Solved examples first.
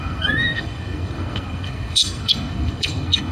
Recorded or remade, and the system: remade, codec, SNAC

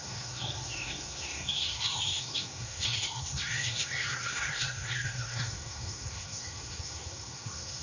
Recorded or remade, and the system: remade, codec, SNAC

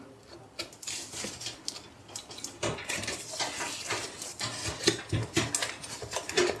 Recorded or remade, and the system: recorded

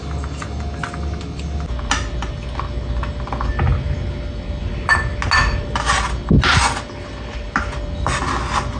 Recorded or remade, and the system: recorded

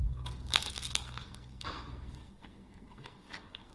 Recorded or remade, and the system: remade, codec, SNAC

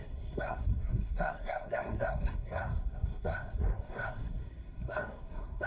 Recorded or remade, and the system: remade, codec, SNAC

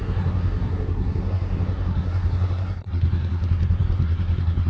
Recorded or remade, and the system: remade, codec, SNAC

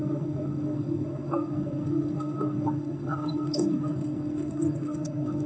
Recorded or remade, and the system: remade, codec, SNAC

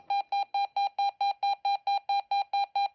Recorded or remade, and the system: recorded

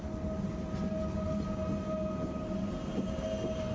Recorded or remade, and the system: recorded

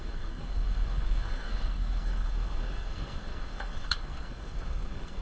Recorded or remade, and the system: remade, codec, SNAC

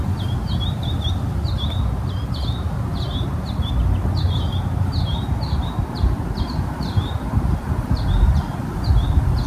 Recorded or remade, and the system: recorded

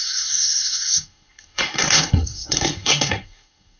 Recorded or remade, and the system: remade, codec, SNAC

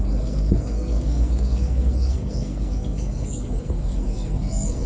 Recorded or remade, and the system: remade, codec, SNAC